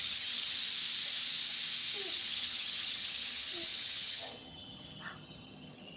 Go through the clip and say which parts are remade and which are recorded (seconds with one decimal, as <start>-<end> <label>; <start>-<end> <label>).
0.0-0.6 remade; 0.6-2.1 recorded; 2.1-6.0 remade